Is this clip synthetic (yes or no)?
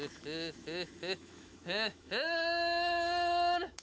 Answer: yes